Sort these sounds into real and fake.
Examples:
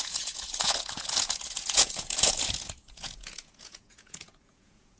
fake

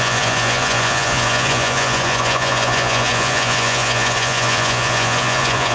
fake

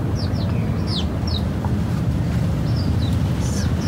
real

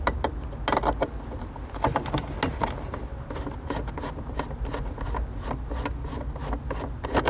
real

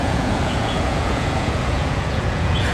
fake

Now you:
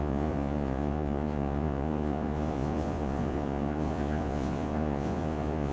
fake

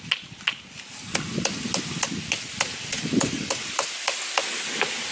real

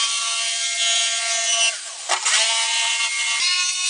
real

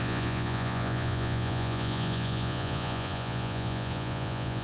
fake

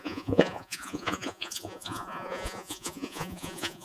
fake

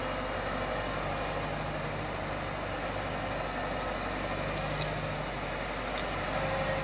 real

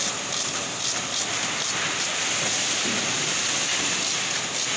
real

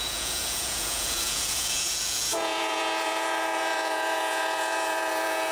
fake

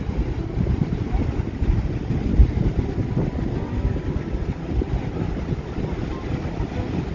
real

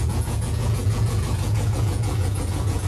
fake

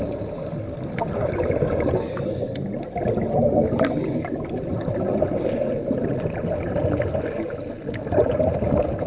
real